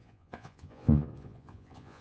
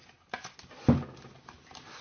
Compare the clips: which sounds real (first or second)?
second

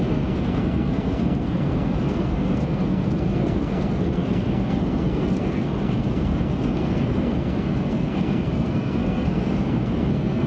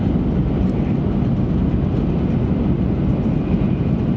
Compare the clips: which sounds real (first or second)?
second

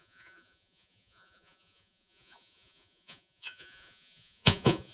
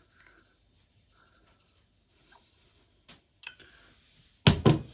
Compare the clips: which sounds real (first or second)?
second